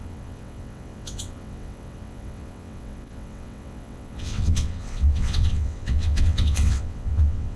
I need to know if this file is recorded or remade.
remade